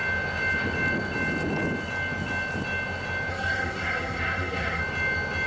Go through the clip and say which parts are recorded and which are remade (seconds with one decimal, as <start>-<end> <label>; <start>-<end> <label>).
0.0-3.3 recorded; 3.3-4.8 remade; 4.8-5.5 recorded